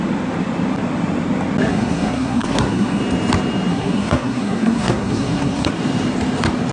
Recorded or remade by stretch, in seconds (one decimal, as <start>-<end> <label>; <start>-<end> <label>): 0.0-1.7 recorded; 1.7-3.0 remade; 3.0-3.7 recorded; 3.7-5.7 remade; 5.7-6.7 recorded